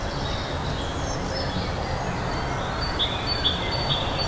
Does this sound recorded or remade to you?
recorded